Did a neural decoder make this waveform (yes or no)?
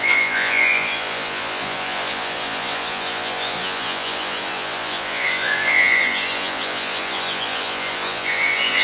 yes